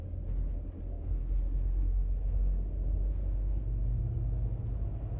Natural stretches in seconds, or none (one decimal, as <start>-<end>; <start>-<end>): 0.0-0.9; 4.0-5.2